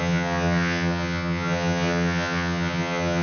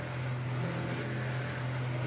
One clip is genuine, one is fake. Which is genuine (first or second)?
second